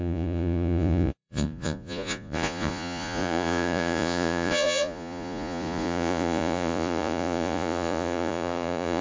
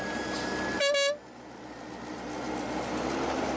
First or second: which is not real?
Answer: first